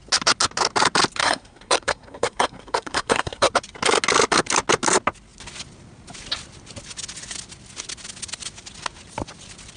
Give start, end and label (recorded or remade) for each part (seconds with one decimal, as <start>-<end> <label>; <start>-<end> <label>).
0.0-1.2 recorded; 1.2-3.5 remade; 3.5-9.8 recorded